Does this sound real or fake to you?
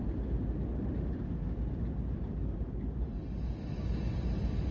real